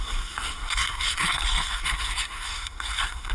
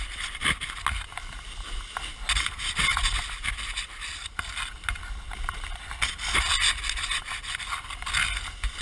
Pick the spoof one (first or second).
first